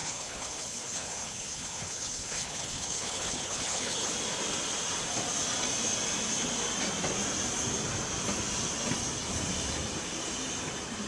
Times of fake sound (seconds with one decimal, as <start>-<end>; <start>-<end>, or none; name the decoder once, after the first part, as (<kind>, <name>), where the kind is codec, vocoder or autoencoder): 0.0-4.1 (codec, HILCodec)